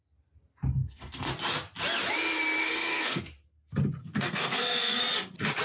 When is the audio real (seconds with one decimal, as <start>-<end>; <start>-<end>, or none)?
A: 0.0-0.7; 1.3-2.6; 3.2-4.0; 5.0-5.6